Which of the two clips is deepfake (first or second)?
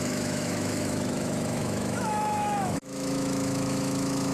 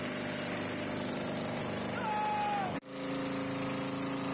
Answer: first